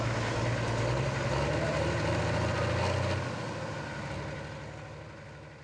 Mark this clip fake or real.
real